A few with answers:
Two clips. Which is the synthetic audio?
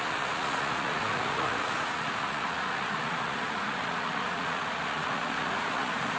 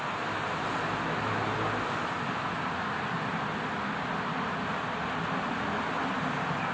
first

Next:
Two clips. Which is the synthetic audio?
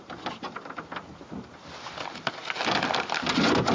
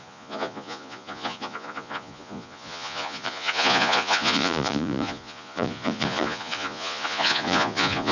second